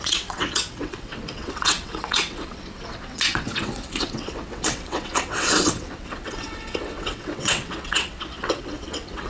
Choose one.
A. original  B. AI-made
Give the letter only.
B